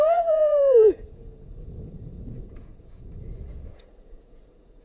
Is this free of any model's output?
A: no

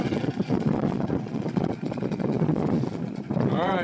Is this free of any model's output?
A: no